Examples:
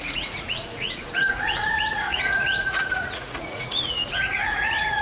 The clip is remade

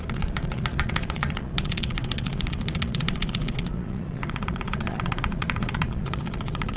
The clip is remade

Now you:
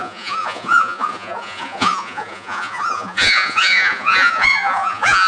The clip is remade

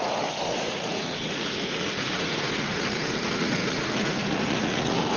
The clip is remade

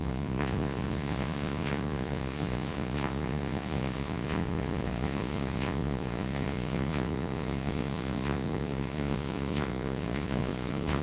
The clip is remade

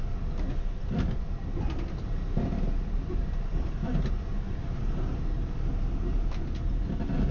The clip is recorded